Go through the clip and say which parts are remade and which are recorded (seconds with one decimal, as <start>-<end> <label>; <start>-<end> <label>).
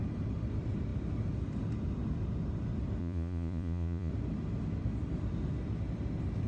0.0-3.0 recorded; 3.0-4.1 remade; 4.1-6.5 recorded